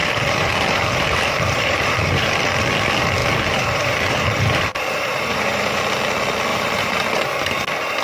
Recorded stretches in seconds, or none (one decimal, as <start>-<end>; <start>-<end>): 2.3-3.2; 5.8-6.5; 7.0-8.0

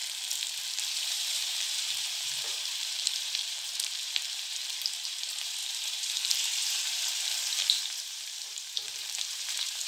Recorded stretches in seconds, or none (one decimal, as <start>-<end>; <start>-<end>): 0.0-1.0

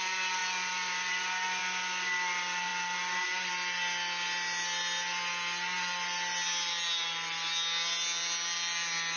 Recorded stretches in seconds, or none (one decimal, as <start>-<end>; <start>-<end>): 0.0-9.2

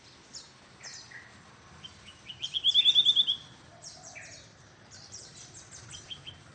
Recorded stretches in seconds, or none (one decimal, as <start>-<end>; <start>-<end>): 0.0-3.7

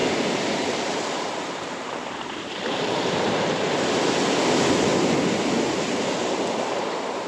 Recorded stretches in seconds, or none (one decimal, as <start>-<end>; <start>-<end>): 3.7-7.3